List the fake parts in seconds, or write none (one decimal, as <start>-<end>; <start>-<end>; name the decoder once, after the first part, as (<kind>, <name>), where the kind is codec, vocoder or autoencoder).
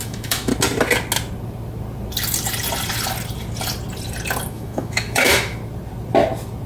0.0-0.5 (autoencoder, DAC-VAE); 4.5-5.6